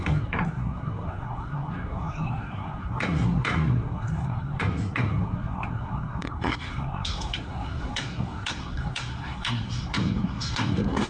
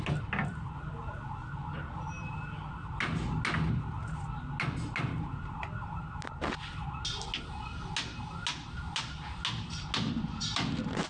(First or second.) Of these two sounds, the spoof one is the first